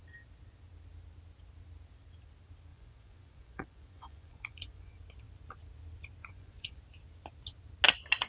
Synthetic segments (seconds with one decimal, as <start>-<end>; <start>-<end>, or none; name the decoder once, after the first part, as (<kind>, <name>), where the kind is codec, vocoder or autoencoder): 2.7-4.9 (vocoder, Vocos); 6.2-6.8